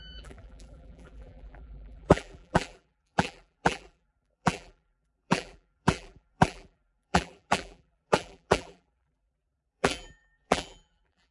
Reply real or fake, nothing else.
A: fake